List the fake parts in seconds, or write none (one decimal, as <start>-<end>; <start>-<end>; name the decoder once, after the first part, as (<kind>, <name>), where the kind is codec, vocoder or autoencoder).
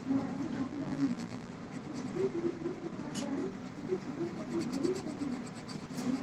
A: 0.7-1.5 (vocoder, BigVGAN v2)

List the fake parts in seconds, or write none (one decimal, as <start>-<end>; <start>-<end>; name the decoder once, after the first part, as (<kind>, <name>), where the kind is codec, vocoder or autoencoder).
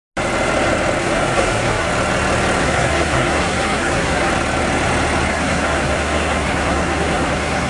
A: 1.0-1.9 (codec, SNAC); 2.6-4.3; 5.3-7.7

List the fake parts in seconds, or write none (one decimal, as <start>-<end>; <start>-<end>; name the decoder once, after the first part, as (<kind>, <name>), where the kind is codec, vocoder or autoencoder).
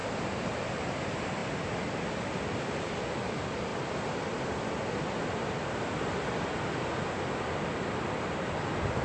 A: 1.4-2.1 (vocoder, BigVGAN v2)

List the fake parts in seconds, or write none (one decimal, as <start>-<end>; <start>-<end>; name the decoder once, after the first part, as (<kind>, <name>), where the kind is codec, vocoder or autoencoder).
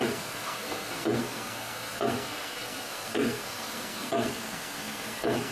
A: 0.0-5.5 (codec, SNAC)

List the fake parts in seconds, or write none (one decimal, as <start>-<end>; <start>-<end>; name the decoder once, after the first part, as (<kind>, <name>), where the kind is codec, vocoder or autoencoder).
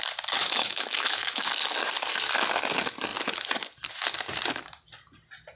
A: 0.4-1.5 (autoencoder, DAC-VAE)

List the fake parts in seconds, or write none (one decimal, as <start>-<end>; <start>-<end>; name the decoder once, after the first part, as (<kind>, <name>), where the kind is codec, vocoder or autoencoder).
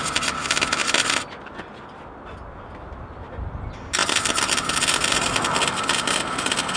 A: none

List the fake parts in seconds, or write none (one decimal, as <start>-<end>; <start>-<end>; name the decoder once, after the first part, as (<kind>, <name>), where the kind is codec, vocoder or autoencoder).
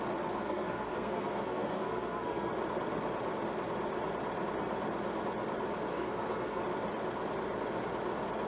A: 0.4-2.5 (codec, SNAC); 5.9-6.6